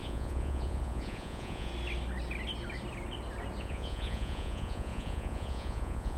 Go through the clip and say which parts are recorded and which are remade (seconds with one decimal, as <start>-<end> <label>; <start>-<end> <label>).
0.0-1.7 remade; 1.7-3.6 recorded; 3.6-6.2 remade

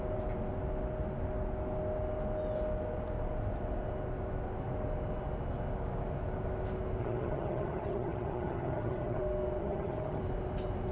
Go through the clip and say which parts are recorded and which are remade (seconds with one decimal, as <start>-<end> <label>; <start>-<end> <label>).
0.0-7.0 recorded; 7.0-9.2 remade; 9.2-9.6 recorded; 9.6-10.2 remade; 10.2-10.9 recorded

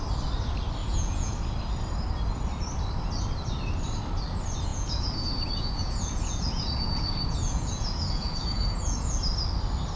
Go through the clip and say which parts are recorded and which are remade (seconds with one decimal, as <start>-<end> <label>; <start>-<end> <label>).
0.0-0.8 recorded; 0.8-1.3 remade; 1.3-4.7 recorded; 4.7-9.2 remade; 9.2-10.0 recorded

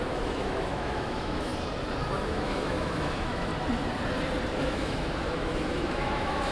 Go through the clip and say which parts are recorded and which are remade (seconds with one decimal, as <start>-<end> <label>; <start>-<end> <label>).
0.0-1.5 remade; 1.5-2.2 recorded; 2.2-3.5 remade; 3.5-4.6 recorded; 4.6-6.5 remade

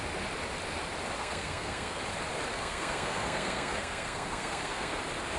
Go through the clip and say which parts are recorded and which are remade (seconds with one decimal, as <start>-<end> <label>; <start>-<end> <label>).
0.0-1.2 recorded; 1.2-2.0 remade; 2.0-2.5 recorded; 2.5-5.0 remade; 5.0-5.4 recorded

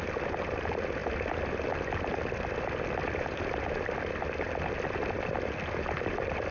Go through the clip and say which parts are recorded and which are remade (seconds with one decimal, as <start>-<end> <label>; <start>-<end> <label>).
0.0-6.5 recorded